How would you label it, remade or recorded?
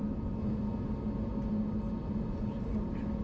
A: recorded